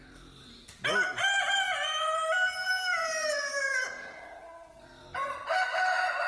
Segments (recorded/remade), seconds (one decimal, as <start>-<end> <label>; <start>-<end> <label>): 0.0-0.9 recorded; 0.9-3.9 remade; 3.9-6.3 recorded